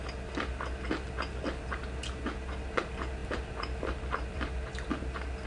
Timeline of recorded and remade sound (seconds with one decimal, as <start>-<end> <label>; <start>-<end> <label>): 0.0-3.2 recorded; 3.2-4.7 remade; 4.7-5.5 recorded